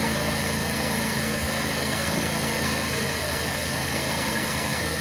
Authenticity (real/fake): fake